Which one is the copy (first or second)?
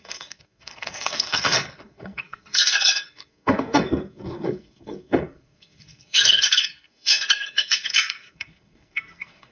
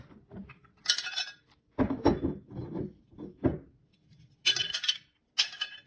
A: first